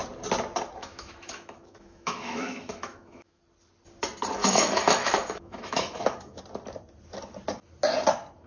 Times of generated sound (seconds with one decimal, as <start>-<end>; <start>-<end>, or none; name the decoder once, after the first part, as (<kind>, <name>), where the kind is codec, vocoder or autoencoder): 0.8-3.4 (autoencoder, DAC-VAE); 4.4-6.4